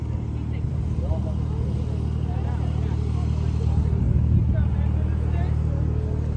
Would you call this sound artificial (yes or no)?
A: no